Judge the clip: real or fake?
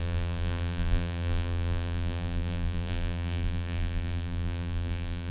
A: fake